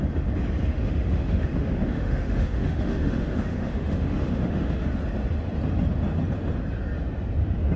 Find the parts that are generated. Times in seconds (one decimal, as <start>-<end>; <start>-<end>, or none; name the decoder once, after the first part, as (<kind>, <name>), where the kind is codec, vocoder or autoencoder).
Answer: 0.7-4.9 (autoencoder, DAC-VAE)